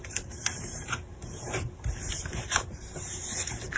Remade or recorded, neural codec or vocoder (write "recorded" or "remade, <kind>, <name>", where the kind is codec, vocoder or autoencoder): remade, vocoder, BigVGAN v2